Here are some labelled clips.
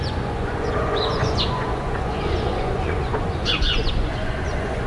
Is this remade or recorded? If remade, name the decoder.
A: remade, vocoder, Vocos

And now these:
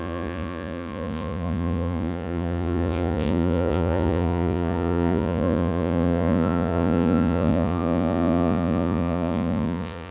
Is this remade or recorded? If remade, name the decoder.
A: remade, vocoder, Vocos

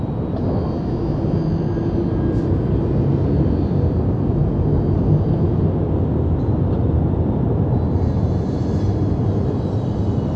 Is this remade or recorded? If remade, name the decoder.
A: recorded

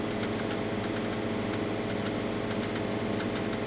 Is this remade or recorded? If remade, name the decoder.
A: recorded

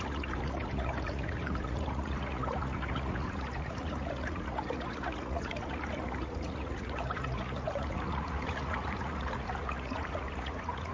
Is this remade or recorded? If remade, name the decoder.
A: remade, vocoder, Vocos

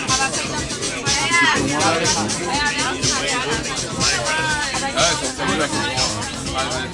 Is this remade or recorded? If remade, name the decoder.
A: recorded